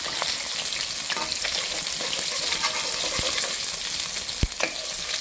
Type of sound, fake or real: real